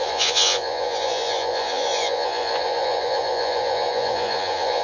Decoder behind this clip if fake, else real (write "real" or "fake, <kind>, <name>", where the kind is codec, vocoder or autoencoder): fake, vocoder, Vocos